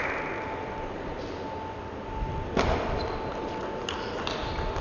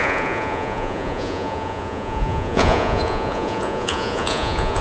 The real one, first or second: first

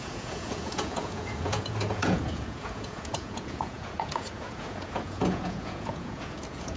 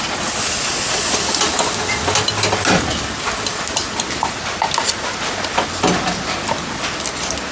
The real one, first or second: second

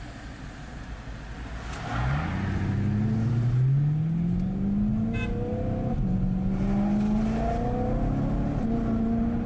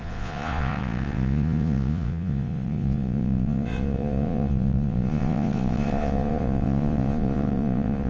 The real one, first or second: first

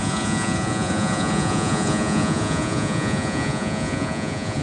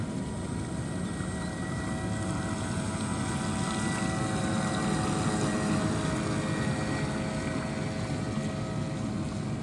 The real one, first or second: second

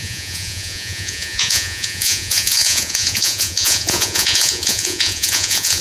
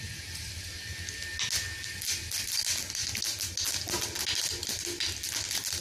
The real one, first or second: second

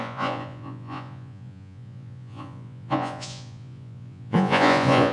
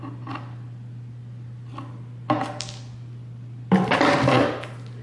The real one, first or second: second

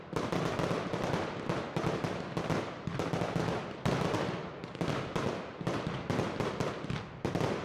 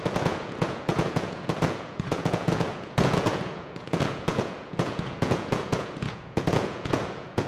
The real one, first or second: first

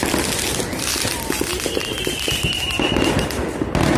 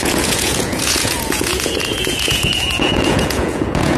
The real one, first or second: first